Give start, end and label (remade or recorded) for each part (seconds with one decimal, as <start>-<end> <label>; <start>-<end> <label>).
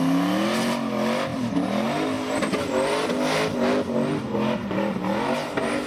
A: 0.0-5.9 recorded